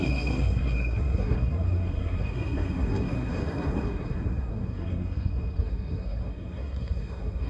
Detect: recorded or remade remade